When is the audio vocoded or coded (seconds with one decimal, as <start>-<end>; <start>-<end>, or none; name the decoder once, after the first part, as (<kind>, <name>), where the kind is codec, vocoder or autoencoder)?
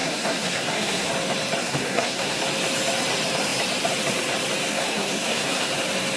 0.0-1.1 (codec, SNAC); 1.6-2.4; 4.7-5.7